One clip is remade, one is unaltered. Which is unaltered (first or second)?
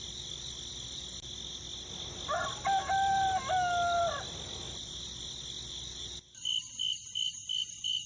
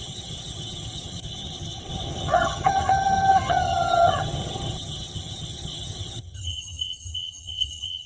first